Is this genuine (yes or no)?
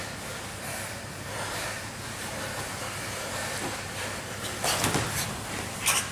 yes